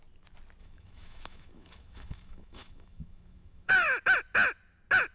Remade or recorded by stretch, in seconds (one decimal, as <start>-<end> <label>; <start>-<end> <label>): 0.0-0.6 recorded; 0.6-3.7 remade; 3.7-5.1 recorded